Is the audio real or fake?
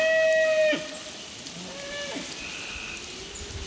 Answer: real